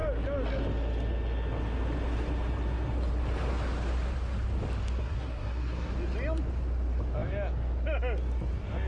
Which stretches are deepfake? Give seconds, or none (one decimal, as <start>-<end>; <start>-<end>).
5.0-5.9